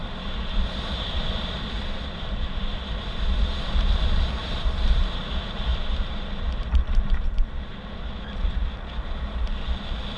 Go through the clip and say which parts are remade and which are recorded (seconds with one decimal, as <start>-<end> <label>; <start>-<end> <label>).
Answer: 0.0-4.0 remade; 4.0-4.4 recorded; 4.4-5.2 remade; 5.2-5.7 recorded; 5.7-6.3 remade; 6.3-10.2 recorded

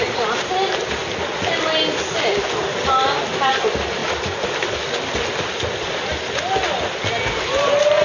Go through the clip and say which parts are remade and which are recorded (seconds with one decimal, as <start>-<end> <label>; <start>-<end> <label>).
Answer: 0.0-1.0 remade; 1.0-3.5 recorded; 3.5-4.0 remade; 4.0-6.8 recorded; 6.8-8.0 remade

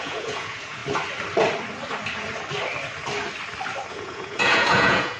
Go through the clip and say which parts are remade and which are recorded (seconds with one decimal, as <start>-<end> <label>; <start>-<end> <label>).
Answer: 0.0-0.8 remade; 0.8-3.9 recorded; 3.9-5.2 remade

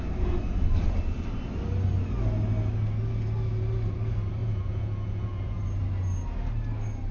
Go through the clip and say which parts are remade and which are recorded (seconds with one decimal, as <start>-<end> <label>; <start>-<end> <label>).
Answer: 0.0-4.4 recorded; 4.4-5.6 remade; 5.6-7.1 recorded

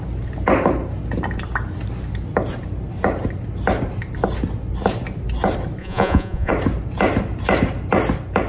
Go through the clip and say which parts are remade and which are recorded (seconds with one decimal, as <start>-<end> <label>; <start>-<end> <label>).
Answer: 0.0-5.8 recorded; 5.8-6.5 remade; 6.5-8.5 recorded